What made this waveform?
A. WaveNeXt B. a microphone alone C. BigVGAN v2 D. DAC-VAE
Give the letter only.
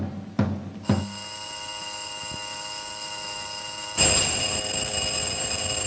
B